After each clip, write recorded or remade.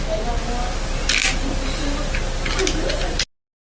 recorded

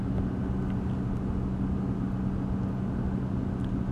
recorded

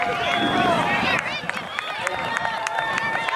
remade